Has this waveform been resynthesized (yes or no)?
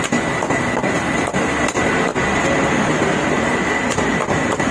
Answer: no